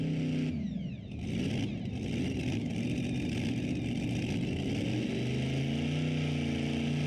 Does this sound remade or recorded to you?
recorded